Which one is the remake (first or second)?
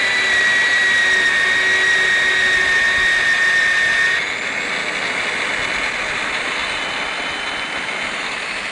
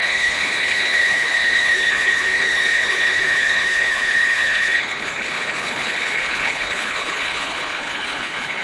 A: second